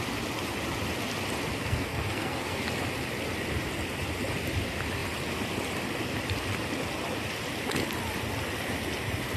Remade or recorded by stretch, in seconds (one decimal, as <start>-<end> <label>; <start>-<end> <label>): 0.0-1.6 recorded; 1.6-2.6 remade; 2.6-9.4 recorded